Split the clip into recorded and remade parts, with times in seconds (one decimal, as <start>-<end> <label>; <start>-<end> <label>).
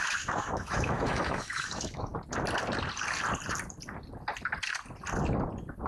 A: 0.0-2.1 remade; 2.1-5.9 recorded